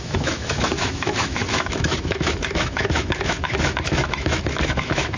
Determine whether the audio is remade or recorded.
remade